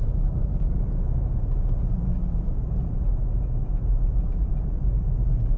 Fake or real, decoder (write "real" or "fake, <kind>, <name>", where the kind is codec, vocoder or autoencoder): fake, vocoder, BigVGAN v2